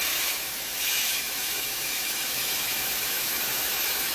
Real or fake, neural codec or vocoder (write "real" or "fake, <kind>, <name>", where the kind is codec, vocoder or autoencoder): fake, autoencoder, DAC-VAE